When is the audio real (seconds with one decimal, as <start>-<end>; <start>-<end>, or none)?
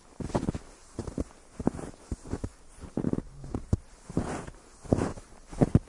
0.0-5.9